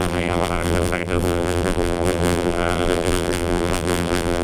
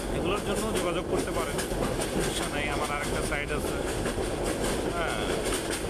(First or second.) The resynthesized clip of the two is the first